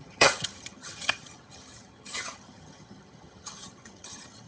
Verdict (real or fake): fake